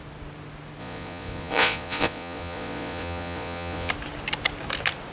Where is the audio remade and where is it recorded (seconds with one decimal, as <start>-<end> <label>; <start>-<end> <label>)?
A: 0.0-0.8 recorded; 0.8-3.9 remade; 3.9-5.1 recorded